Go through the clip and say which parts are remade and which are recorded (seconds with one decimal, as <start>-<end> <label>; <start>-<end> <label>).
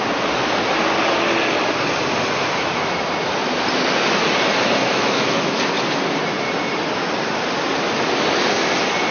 0.0-4.8 recorded; 4.8-5.6 remade; 5.6-9.1 recorded